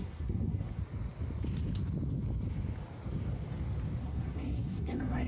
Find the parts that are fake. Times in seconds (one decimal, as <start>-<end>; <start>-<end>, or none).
0.0-0.8; 4.0-5.3